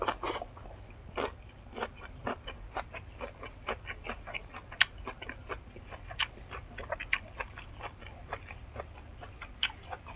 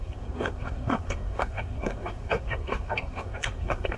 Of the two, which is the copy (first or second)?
second